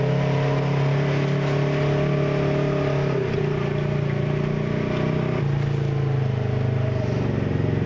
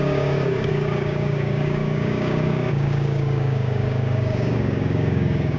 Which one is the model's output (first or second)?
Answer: second